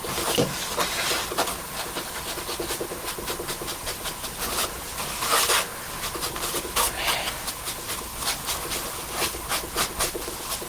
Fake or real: real